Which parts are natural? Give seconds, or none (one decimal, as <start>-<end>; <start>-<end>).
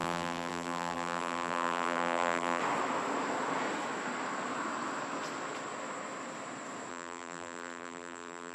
2.6-6.9